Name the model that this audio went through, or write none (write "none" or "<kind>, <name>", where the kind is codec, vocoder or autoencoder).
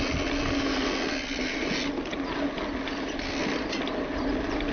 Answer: none